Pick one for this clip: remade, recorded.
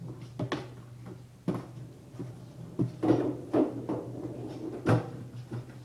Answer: recorded